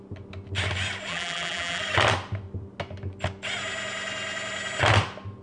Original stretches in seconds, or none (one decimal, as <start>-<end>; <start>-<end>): 0.0-1.1; 1.8-5.4